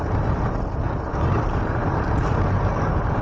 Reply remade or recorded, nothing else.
recorded